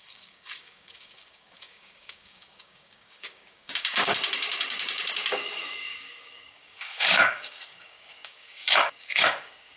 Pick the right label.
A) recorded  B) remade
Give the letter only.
B